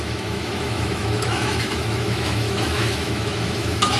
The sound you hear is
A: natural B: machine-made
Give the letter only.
B